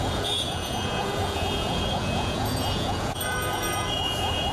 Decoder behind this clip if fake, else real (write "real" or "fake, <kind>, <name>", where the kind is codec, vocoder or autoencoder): fake, vocoder, Vocos